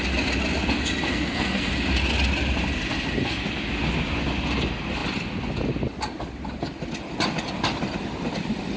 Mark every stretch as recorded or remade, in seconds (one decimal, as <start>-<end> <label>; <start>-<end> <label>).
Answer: 0.0-1.1 recorded; 1.1-1.7 remade; 1.7-8.8 recorded